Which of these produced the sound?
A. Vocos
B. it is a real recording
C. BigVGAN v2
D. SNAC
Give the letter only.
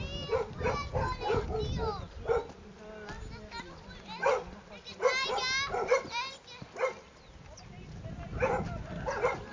B